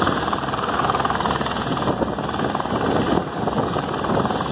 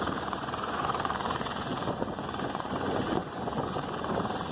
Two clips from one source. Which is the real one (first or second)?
first